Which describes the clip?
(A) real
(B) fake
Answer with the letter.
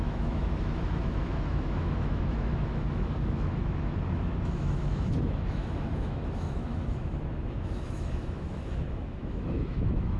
B